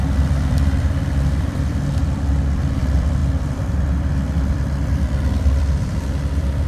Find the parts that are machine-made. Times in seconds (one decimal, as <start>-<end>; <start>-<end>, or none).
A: 0.0-6.7